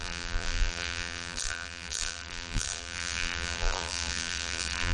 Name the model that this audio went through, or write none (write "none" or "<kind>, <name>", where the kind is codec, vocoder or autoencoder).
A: vocoder, BigVGAN v2